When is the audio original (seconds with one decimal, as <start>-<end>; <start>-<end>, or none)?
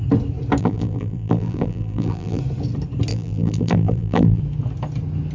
0.0-0.6; 2.4-3.1; 4.4-5.3